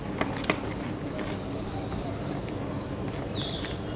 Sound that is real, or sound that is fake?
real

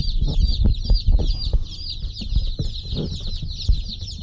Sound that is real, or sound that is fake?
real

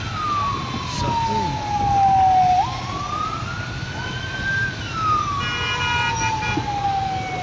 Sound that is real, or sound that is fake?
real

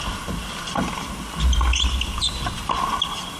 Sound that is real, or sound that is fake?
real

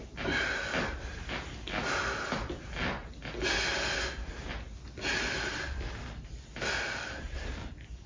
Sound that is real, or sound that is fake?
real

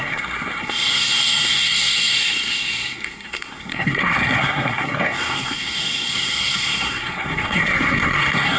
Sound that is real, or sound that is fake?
fake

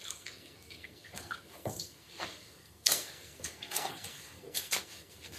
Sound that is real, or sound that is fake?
fake